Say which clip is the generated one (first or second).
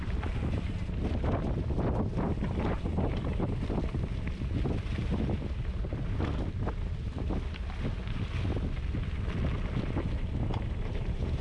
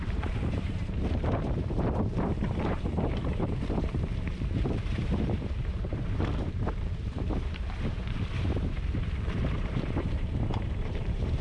second